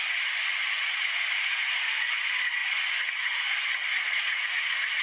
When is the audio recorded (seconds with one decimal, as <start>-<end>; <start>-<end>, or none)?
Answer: 0.0-0.6; 2.1-2.6; 3.4-3.9